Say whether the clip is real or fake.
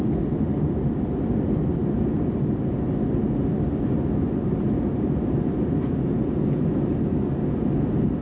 real